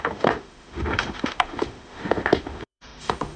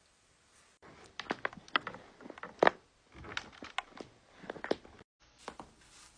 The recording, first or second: second